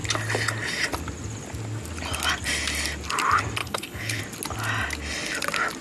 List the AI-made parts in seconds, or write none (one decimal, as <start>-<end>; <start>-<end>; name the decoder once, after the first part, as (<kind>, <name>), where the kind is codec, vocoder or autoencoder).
3.6-4.2 (codec, HILCodec)